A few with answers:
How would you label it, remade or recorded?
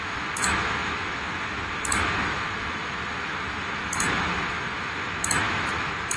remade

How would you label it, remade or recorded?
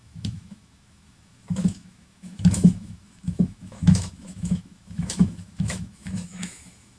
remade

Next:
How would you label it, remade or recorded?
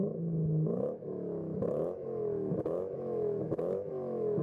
remade